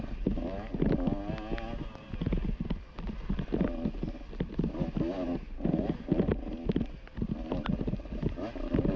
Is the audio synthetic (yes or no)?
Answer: no